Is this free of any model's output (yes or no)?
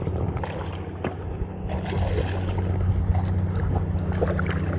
yes